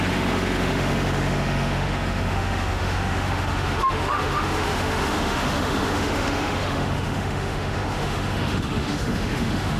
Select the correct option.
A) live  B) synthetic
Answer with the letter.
B